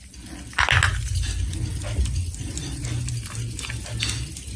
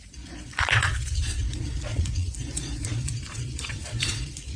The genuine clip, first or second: first